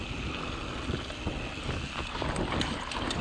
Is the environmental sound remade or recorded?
recorded